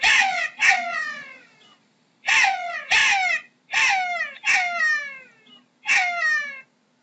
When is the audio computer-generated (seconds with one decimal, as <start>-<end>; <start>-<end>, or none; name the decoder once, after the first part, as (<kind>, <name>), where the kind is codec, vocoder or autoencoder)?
0.0-1.8 (vocoder, WaveNeXt); 2.4-3.0